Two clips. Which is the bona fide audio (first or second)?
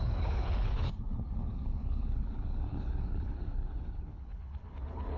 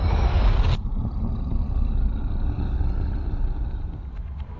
second